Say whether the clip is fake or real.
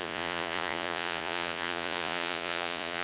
fake